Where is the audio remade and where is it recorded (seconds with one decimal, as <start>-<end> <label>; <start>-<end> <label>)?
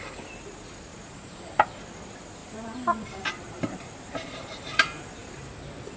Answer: 0.0-0.9 recorded; 0.9-1.8 remade; 1.8-2.4 recorded; 2.4-5.6 remade; 5.6-6.0 recorded